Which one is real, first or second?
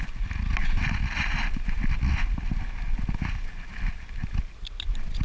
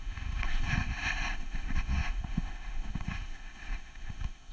first